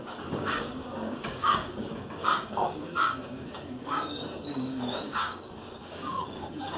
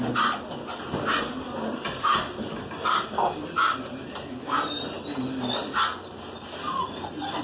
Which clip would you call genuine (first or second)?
second